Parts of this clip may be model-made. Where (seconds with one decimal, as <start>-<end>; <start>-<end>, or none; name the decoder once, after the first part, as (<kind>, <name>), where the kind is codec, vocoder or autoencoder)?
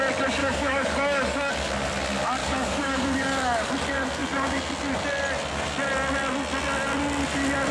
0.4-1.5 (codec, DAC); 2.4-3.7